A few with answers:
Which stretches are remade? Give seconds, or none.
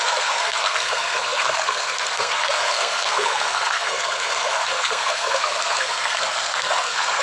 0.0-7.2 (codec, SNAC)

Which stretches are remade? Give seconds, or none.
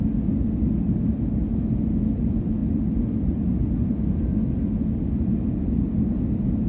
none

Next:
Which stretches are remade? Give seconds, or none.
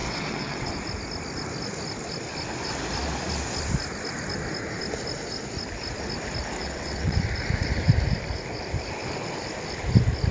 0.0-0.7 (vocoder, WaveNeXt); 6.6-7.2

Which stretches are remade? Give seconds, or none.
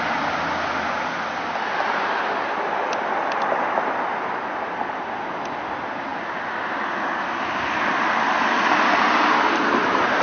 none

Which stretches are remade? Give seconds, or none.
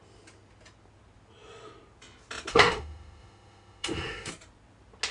2.5-4.3 (autoencoder, DAC-VAE)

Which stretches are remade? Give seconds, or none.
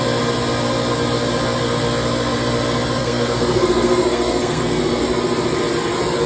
3.0-5.0 (codec, SNAC)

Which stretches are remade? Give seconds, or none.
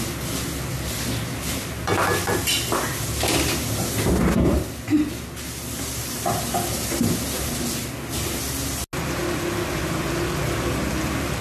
none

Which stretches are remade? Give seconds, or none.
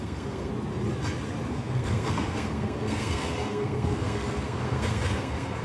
0.0-0.5 (codec, SNAC); 1.5-5.6